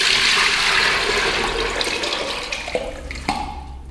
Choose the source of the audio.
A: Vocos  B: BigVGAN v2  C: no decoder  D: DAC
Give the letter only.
C